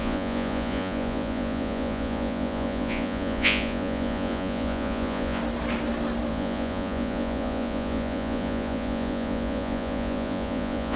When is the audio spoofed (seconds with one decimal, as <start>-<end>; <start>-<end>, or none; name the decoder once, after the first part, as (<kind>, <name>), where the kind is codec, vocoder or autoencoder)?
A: 0.0-5.4 (vocoder, Vocos); 6.3-11.0